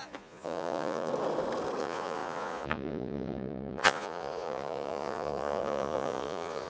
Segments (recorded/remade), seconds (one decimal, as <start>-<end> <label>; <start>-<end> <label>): 0.0-1.1 remade; 1.1-1.8 recorded; 1.8-6.7 remade